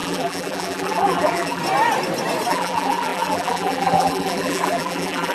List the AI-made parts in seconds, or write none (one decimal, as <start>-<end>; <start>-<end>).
0.0-1.6; 2.5-5.3